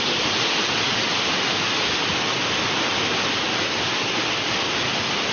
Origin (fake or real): real